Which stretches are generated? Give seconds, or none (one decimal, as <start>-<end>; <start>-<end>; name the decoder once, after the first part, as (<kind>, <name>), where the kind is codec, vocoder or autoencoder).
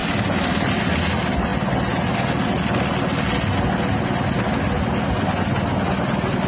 none